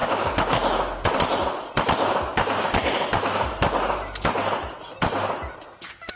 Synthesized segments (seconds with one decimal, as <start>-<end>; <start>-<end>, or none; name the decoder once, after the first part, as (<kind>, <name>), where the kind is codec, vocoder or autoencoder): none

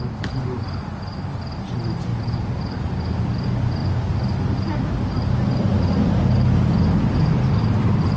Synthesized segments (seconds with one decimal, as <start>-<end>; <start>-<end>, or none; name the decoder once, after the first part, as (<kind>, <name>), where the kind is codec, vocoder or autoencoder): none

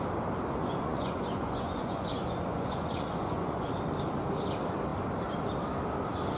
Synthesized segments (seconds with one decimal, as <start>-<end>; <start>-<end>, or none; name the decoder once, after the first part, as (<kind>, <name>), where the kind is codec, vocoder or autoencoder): 0.6-3.7 (vocoder, Vocos)

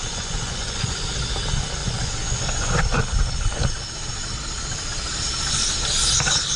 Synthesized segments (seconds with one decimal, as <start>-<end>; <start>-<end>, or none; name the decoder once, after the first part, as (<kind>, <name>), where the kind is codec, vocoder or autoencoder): 0.0-1.1 (vocoder, Vocos); 1.8-2.8

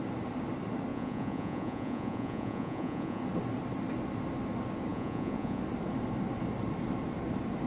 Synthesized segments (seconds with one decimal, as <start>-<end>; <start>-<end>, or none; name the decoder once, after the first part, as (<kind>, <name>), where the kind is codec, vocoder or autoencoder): 0.9-3.2 (vocoder, Vocos); 4.9-5.6

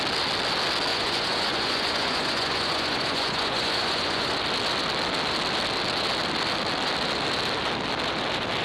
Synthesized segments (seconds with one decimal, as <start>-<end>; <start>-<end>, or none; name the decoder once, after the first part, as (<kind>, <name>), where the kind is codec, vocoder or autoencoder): 0.9-4.3 (vocoder, Vocos)

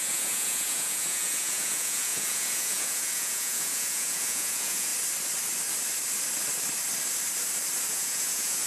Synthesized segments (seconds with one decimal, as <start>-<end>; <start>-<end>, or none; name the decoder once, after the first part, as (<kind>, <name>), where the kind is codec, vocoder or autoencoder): 0.0-4.9 (vocoder, Vocos); 7.9-8.7